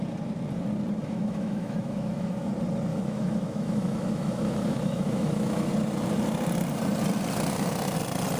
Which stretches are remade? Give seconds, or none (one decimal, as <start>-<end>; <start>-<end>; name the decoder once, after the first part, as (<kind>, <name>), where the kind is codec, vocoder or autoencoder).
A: 1.0-2.5 (autoencoder, DAC-VAE); 2.9-5.7